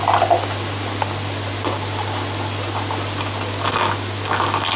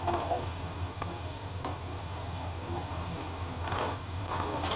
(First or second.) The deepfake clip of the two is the second